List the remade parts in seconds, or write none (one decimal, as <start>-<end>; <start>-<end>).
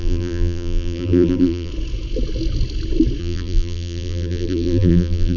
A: 0.0-1.7; 3.2-5.4